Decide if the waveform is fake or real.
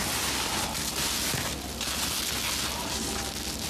real